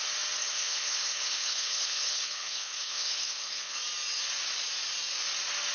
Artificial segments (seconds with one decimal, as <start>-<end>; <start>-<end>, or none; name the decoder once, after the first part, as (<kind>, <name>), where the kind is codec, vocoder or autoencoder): 0.4-3.8 (codec, HILCodec)